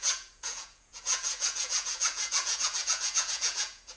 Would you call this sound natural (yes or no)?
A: no